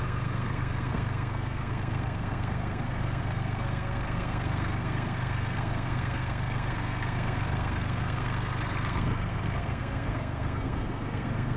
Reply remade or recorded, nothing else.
remade